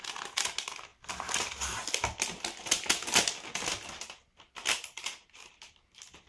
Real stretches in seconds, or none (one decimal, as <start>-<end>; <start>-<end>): 0.0-6.3